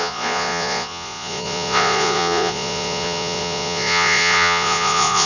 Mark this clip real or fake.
fake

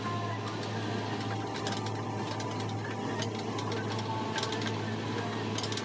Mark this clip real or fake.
real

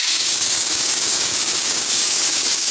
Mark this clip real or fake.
fake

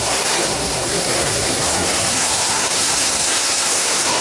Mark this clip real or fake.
fake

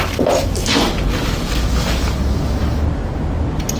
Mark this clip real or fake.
real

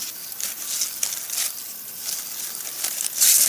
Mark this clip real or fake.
real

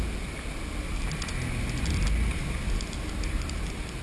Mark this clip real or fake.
real